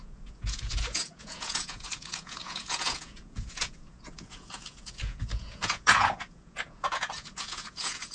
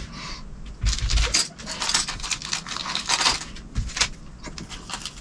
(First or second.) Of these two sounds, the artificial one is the first